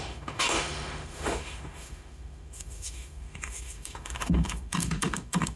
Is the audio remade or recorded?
remade